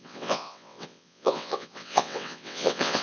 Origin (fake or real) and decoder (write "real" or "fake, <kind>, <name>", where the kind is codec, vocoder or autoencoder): fake, vocoder, WaveNeXt